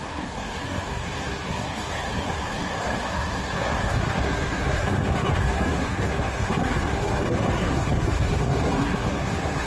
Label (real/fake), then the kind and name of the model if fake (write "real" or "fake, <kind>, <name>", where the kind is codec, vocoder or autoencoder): fake, codec, SNAC